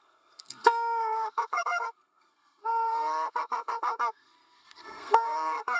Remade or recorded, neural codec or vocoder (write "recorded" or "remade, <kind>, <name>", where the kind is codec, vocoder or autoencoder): remade, codec, SNAC